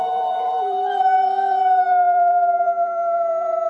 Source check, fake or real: fake